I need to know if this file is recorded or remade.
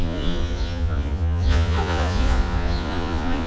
remade